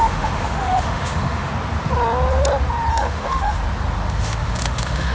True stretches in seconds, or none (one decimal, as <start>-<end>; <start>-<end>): 1.5-2.9; 3.6-4.1